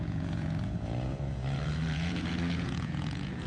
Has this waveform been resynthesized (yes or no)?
yes